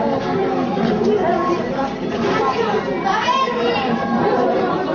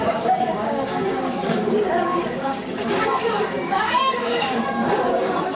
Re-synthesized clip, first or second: second